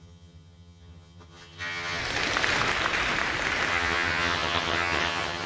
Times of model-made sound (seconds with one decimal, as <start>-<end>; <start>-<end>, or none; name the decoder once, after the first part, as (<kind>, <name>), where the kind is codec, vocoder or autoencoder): 0.0-2.0 (vocoder, HiFi-GAN); 3.7-5.5